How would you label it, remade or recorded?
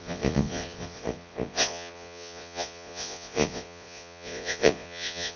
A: remade